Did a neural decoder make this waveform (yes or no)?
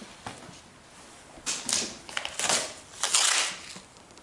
no